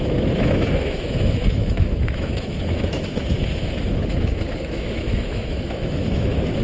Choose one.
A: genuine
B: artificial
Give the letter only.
B